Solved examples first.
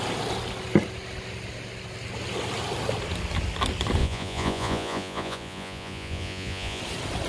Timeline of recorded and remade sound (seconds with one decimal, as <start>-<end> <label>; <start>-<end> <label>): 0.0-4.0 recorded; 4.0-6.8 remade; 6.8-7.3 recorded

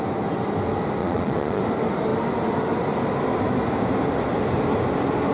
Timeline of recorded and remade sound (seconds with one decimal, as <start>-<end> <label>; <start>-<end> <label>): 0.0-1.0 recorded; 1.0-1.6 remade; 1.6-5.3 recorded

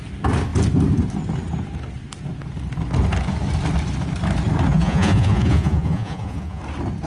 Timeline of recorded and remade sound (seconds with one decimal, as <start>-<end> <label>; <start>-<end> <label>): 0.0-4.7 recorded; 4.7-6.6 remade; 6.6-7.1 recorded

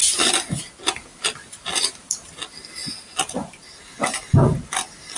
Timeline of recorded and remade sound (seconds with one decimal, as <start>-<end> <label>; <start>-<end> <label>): 0.0-5.2 recorded

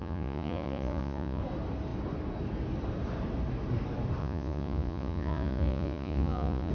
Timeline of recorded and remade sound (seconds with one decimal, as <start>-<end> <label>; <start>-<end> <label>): 0.0-1.4 remade; 1.4-4.2 recorded; 4.2-6.7 remade